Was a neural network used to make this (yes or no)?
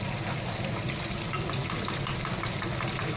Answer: no